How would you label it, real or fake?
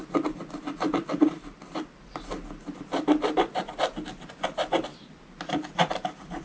real